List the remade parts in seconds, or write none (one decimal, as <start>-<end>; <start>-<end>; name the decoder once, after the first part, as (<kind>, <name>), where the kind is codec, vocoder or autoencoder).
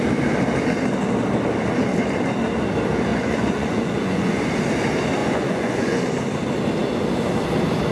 3.1-4.5 (vocoder, Vocos); 5.2-6.0